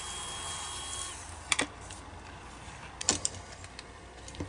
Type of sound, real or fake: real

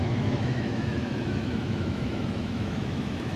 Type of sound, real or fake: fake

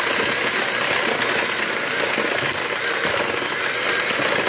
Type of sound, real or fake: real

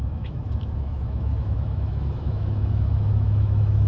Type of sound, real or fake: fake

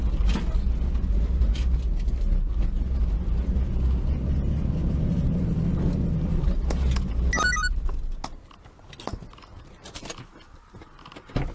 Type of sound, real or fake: real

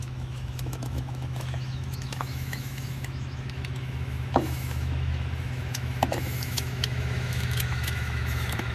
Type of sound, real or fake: fake